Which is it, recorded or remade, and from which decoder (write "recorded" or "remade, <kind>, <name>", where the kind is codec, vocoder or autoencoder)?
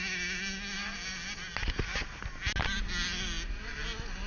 recorded